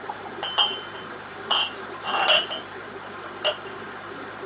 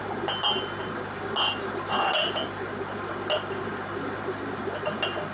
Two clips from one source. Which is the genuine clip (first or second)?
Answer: second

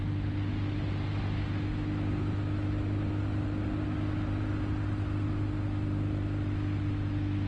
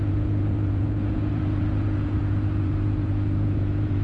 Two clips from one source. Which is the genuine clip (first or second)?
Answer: first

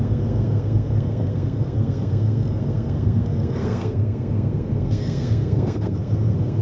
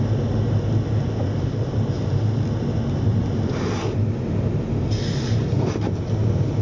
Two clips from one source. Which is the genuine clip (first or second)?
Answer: second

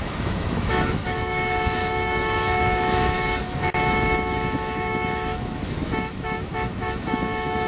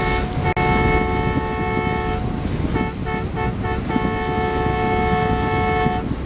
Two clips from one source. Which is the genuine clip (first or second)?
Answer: second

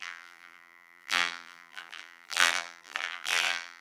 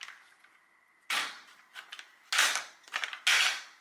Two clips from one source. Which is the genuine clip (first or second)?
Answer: second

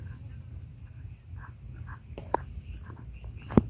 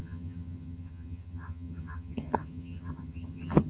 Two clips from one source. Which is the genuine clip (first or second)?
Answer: first